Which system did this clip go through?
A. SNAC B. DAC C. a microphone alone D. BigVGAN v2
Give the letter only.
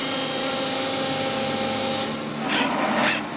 C